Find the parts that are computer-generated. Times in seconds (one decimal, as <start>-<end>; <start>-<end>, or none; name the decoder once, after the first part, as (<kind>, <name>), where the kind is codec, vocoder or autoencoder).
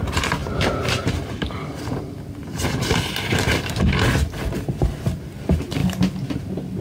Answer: 0.4-4.2 (vocoder, BigVGAN v2)